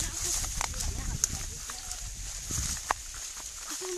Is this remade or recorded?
recorded